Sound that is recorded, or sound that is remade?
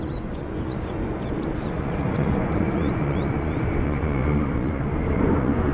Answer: remade